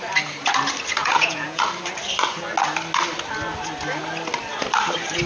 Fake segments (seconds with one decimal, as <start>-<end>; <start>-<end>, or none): 1.0-1.6

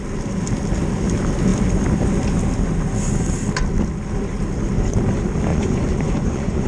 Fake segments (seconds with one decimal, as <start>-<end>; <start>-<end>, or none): 5.5-6.7

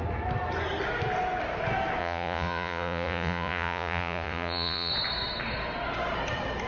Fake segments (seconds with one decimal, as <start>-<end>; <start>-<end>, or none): 2.0-4.9